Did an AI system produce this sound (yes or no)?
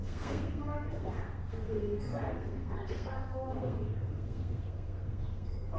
yes